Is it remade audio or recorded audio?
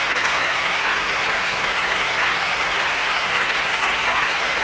remade